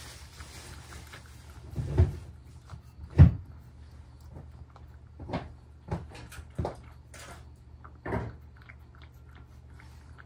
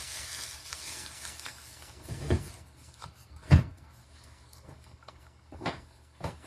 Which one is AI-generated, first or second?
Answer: second